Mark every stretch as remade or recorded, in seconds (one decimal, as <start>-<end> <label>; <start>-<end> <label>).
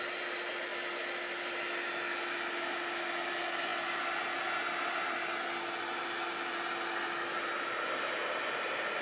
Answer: 0.0-9.0 recorded